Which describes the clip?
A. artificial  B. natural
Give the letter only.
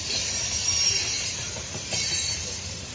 A